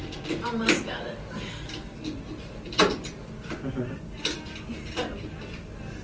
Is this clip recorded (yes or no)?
yes